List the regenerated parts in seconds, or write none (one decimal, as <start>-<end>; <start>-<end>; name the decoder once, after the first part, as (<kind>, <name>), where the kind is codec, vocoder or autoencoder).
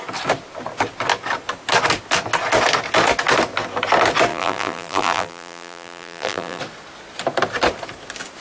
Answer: 4.3-6.6 (vocoder, BigVGAN v2)